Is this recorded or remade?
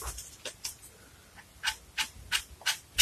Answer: recorded